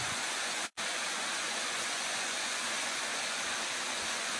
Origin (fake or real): fake